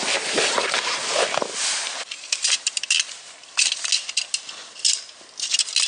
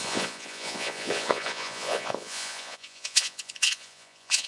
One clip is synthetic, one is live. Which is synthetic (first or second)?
second